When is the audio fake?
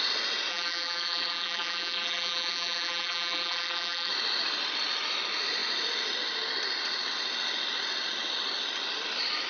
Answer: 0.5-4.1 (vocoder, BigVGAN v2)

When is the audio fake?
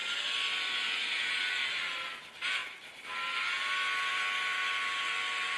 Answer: none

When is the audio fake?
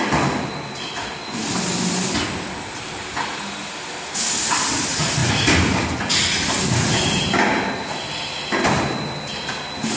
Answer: none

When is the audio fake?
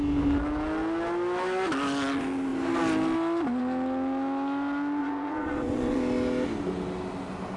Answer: 5.0-6.0 (vocoder, Vocos)